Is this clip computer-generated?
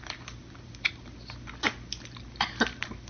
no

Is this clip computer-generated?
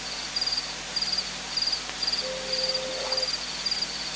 no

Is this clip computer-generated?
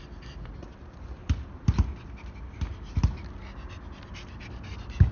no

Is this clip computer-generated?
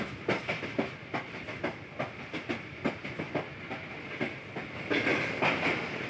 no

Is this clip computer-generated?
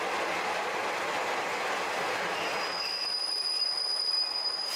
no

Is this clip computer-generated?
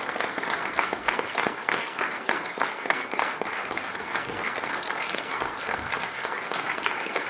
yes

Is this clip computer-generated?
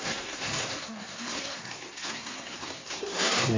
yes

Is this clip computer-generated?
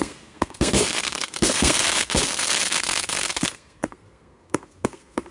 yes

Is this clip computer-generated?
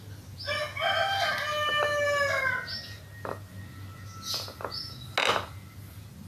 no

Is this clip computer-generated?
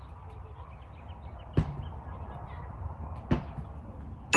no